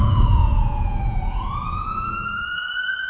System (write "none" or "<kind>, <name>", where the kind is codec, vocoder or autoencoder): vocoder, Vocos